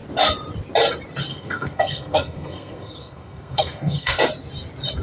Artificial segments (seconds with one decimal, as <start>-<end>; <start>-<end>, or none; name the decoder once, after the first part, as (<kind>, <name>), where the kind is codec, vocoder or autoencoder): 1.3-4.2 (codec, SNAC)